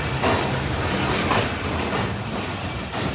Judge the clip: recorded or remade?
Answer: recorded